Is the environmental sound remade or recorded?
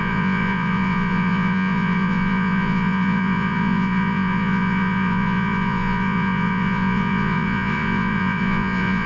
remade